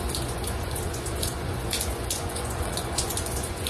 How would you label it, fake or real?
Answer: fake